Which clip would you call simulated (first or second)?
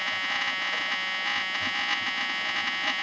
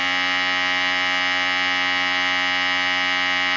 first